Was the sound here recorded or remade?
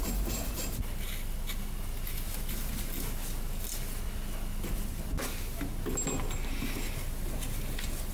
recorded